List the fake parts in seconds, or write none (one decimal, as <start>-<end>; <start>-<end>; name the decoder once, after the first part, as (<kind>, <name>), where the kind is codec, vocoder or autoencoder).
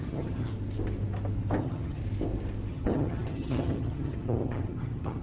0.0-0.5 (vocoder, HiFi-GAN); 1.6-2.0; 2.7-5.2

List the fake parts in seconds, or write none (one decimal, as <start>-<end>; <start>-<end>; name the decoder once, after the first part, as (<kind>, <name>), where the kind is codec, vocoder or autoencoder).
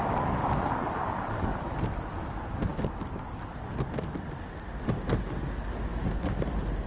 none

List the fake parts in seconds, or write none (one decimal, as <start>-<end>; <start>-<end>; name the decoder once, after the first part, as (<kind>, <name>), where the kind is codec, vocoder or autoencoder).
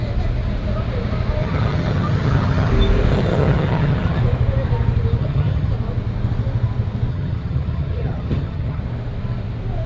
1.4-2.7 (vocoder, HiFi-GAN); 3.1-4.2; 5.2-5.7; 7.1-8.8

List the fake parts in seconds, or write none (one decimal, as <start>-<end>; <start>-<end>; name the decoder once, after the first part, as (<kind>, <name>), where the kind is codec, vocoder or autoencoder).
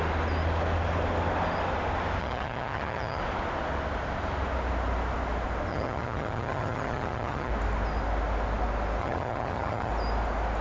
2.2-3.2 (vocoder, HiFi-GAN); 5.7-7.5; 9.0-9.9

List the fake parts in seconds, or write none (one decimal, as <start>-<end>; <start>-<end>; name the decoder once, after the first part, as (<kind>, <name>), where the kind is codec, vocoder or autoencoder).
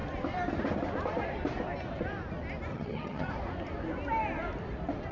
2.7-3.3 (vocoder, HiFi-GAN)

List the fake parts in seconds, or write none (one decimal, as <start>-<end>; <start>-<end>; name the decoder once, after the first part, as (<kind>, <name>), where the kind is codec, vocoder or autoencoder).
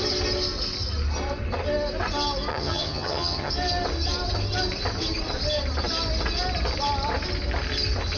2.5-3.5 (vocoder, HiFi-GAN)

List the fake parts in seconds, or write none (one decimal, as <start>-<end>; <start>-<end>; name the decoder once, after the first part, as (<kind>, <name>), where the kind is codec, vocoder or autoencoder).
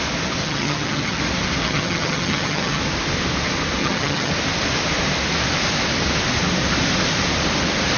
0.4-1.2 (vocoder, HiFi-GAN); 1.6-2.8; 3.8-4.3